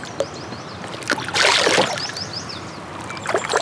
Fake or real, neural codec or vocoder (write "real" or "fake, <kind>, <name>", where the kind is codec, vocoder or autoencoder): real